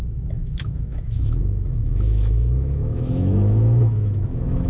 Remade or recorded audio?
remade